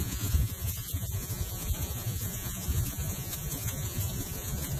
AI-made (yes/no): yes